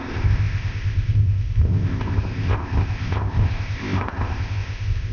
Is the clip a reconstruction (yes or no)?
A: yes